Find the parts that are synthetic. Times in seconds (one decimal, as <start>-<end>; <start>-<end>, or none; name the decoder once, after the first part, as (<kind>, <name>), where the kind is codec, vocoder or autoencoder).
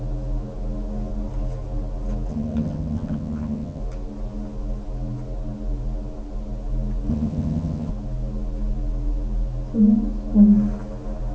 2.3-3.8 (vocoder, HiFi-GAN); 7.1-7.9